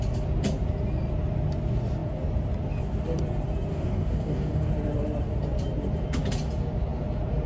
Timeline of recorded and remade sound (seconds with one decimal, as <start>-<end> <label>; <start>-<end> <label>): 0.0-3.7 recorded; 3.7-4.7 remade; 4.7-7.5 recorded